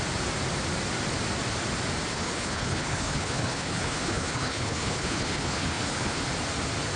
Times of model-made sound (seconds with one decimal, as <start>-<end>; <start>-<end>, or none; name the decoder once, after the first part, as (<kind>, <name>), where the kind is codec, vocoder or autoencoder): 2.1-6.2 (codec, HILCodec)